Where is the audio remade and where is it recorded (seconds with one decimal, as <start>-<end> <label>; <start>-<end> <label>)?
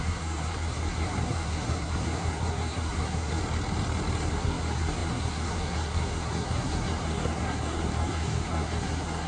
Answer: 0.0-3.4 remade; 3.4-4.3 recorded; 4.3-9.3 remade